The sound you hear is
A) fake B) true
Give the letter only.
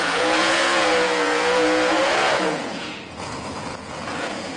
A